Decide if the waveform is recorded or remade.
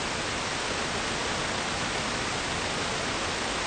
recorded